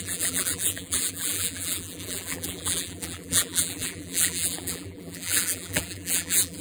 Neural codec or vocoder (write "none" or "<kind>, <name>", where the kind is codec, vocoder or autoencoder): vocoder, BigVGAN v2